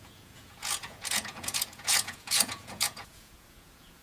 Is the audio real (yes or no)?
no